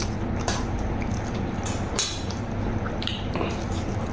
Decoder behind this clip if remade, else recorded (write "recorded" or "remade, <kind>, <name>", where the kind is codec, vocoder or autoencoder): recorded